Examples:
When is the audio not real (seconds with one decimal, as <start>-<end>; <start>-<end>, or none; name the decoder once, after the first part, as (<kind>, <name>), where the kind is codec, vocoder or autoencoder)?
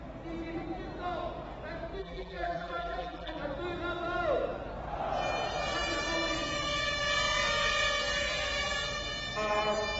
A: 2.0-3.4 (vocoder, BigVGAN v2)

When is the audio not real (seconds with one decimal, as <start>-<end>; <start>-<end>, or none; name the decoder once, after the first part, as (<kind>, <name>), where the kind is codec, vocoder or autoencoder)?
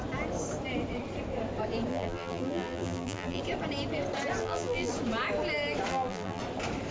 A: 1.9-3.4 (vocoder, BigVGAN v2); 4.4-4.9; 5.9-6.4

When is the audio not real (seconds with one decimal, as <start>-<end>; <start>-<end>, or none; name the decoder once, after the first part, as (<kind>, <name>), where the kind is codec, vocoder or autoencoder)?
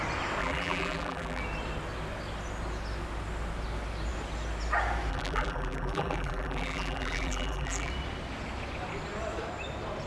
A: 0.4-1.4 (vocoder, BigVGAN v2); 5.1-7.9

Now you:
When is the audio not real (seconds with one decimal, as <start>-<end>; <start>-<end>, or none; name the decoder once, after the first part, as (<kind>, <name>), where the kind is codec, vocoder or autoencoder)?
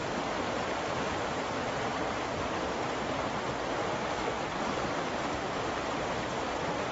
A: 0.0-1.6 (vocoder, BigVGAN v2); 3.8-6.9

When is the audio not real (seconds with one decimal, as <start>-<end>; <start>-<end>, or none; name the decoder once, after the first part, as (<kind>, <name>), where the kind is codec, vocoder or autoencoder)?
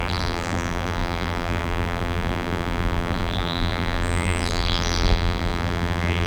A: 0.0-6.3 (vocoder, BigVGAN v2)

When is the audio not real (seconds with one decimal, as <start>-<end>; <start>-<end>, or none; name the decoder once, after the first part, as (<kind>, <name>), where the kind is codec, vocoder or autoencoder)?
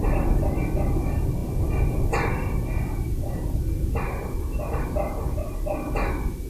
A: none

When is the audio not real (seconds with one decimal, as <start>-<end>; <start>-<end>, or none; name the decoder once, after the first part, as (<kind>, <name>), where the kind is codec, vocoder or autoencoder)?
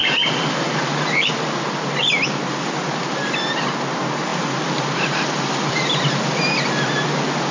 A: 4.3-6.0 (vocoder, BigVGAN v2)